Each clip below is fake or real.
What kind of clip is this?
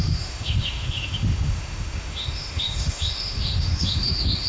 fake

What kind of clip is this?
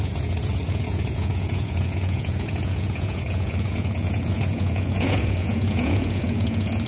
fake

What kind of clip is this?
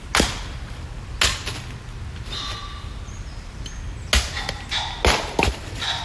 real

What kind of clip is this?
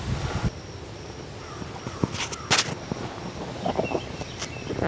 real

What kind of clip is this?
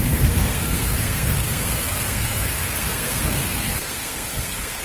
fake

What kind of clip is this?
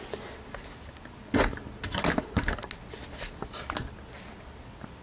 real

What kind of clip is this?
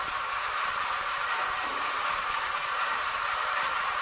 fake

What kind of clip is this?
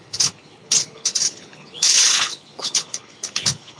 fake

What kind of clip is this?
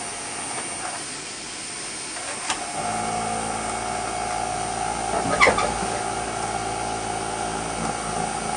real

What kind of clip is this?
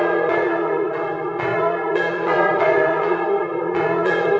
fake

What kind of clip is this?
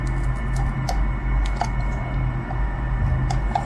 real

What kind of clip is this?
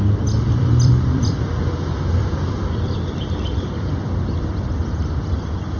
fake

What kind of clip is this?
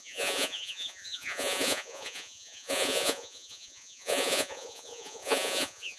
fake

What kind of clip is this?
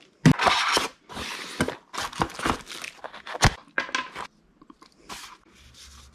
real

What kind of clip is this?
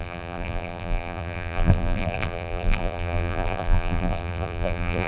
fake